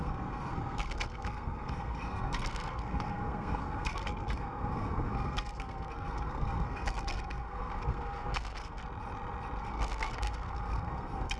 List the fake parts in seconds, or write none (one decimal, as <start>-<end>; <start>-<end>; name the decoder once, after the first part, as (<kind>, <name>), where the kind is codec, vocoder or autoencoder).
0.0-8.8 (codec, SNAC); 9.6-11.4